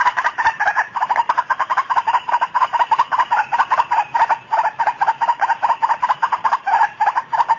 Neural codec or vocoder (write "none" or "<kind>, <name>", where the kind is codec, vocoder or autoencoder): none